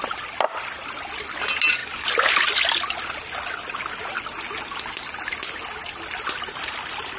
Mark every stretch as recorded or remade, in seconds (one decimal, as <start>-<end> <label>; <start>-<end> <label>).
0.0-7.2 recorded